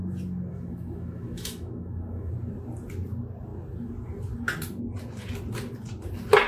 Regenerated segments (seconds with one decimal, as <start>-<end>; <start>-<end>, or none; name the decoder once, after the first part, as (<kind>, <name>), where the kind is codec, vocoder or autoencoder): 0.5-2.3 (autoencoder, DAC-VAE)